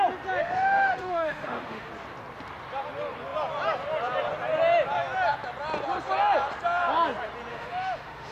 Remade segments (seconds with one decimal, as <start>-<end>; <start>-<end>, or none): 0.4-1.9; 7.5-8.3